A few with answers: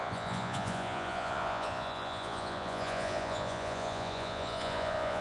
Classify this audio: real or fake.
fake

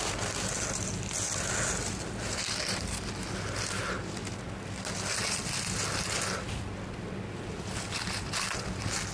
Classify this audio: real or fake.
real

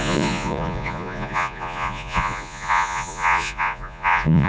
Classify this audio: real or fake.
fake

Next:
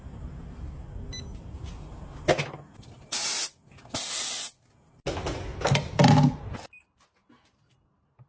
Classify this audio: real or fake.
real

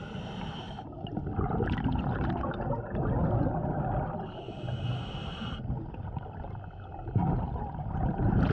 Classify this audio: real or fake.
real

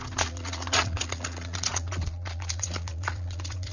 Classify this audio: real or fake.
fake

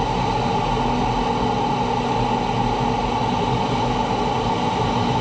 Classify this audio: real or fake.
real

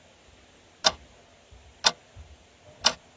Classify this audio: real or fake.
real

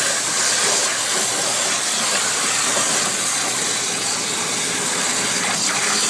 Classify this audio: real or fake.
real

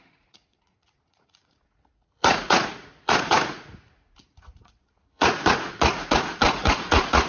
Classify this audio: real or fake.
fake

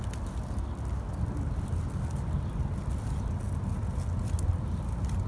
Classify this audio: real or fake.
real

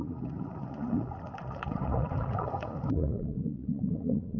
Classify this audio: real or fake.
fake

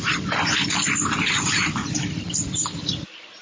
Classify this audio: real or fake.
real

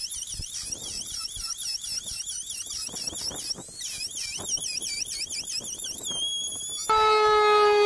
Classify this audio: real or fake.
real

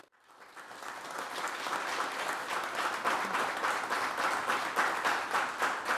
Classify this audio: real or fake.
real